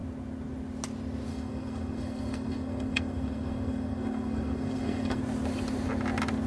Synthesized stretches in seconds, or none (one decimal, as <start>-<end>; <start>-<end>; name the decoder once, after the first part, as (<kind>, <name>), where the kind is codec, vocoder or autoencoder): 1.3-5.2 (codec, SNAC)